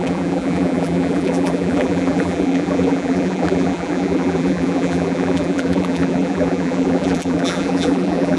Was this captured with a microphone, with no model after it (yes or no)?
no